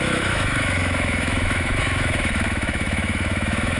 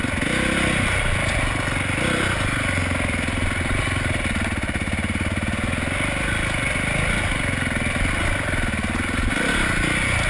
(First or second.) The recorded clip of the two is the second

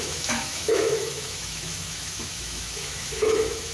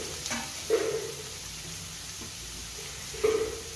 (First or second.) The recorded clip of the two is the second